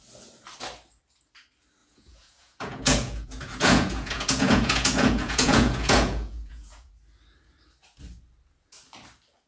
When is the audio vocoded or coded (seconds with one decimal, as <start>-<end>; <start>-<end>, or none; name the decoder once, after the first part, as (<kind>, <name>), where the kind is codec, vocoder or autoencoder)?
1.8-6.9 (vocoder, Vocos)